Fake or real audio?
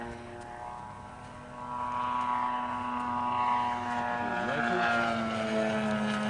real